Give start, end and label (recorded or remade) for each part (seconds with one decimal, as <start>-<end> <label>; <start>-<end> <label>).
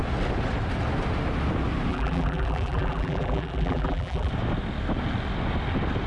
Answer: 0.0-1.9 recorded; 1.9-4.3 remade; 4.3-6.1 recorded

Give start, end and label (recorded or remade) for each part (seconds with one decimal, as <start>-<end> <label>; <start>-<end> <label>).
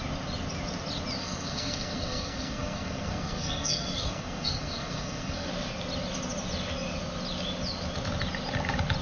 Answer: 0.0-1.2 recorded; 1.2-5.5 remade; 5.5-9.0 recorded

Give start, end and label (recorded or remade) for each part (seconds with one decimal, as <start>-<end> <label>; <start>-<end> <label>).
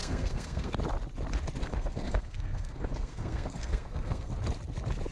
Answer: 0.0-0.7 remade; 0.7-1.6 recorded; 1.6-4.3 remade; 4.3-5.1 recorded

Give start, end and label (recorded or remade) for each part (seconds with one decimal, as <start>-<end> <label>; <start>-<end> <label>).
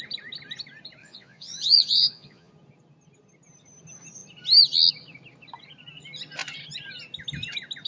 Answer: 0.0-1.0 recorded; 1.0-2.5 remade; 2.5-7.9 recorded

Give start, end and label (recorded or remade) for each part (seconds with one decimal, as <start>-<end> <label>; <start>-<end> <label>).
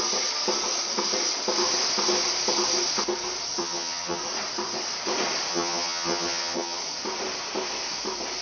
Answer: 0.0-3.6 recorded; 3.6-4.2 remade; 4.2-5.5 recorded; 5.5-6.8 remade; 6.8-8.4 recorded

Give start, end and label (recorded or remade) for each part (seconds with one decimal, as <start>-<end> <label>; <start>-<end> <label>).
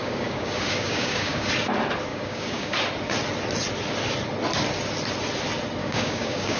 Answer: 0.0-1.5 remade; 1.5-2.1 recorded; 2.1-2.7 remade; 2.7-5.8 recorded; 5.8-6.6 remade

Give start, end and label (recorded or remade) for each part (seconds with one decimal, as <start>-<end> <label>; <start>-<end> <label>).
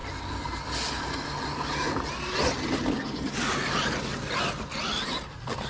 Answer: 0.0-5.7 recorded